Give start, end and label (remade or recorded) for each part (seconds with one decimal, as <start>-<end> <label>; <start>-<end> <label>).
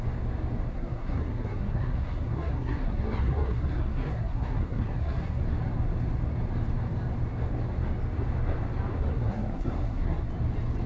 0.0-0.7 recorded; 0.7-5.4 remade; 5.4-9.1 recorded; 9.1-10.3 remade; 10.3-10.9 recorded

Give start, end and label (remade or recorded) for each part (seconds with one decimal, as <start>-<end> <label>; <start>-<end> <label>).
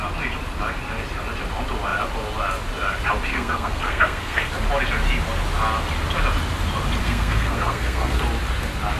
0.0-3.3 recorded; 3.3-4.5 remade; 4.5-7.0 recorded; 7.0-8.2 remade; 8.2-9.0 recorded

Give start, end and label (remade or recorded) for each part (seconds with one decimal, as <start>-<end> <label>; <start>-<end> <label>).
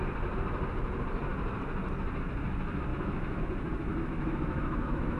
0.0-2.9 recorded; 2.9-3.4 remade; 3.4-3.9 recorded; 3.9-5.2 remade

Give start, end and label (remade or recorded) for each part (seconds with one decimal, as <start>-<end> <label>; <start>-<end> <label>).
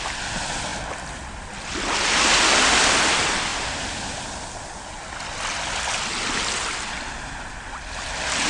0.0-8.5 recorded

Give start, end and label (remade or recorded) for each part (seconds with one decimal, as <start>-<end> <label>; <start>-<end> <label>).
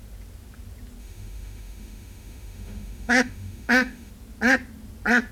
0.0-1.0 recorded; 1.0-4.1 remade; 4.1-5.3 recorded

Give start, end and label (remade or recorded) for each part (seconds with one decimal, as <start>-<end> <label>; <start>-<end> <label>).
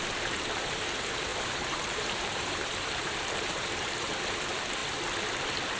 0.0-4.8 remade; 4.8-5.3 recorded; 5.3-5.8 remade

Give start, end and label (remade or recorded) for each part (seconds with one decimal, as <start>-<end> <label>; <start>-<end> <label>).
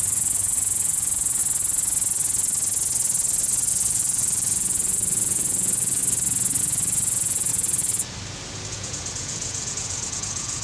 0.0-1.4 remade; 1.4-3.7 recorded; 3.7-6.0 remade; 6.0-6.6 recorded; 6.6-7.5 remade; 7.5-8.7 recorded; 8.7-10.6 remade